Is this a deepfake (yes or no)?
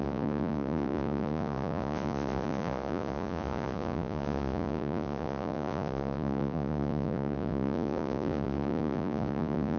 yes